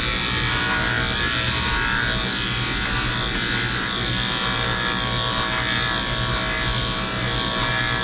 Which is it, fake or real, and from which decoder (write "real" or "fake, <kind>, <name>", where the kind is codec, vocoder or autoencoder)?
real